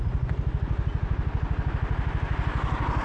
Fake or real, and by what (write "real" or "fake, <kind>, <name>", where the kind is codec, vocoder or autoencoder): real